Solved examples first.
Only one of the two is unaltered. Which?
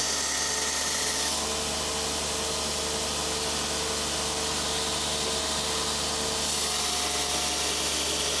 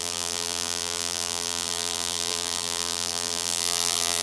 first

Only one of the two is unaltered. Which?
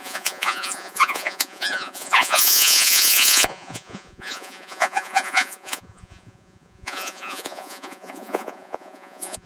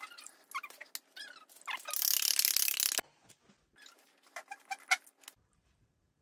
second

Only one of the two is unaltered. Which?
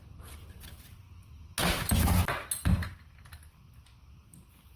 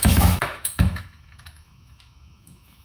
first